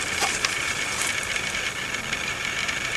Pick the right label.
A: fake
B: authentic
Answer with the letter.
A